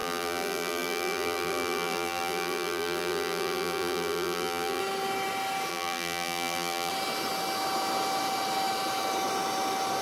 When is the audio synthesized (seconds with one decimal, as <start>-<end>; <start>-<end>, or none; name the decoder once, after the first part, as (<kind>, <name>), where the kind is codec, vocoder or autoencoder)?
0.0-4.8 (vocoder, BigVGAN v2); 5.7-6.9